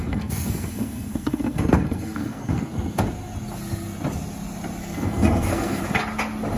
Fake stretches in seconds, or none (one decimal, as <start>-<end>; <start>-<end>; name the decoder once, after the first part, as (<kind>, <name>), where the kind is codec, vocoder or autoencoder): 0.0-3.0 (codec, SNAC); 4.8-5.8